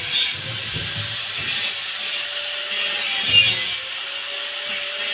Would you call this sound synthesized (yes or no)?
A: yes